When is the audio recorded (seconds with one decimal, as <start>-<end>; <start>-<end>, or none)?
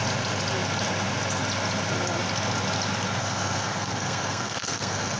0.0-3.2